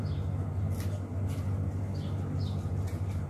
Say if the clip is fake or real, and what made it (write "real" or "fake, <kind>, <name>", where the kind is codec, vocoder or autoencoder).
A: real